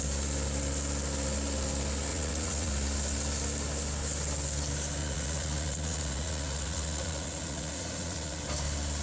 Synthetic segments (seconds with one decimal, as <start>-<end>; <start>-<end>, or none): 2.1-2.7; 5.0-8.4